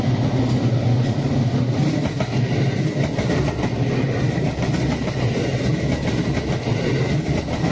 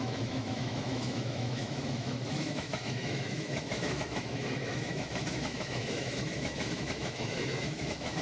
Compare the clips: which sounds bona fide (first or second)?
first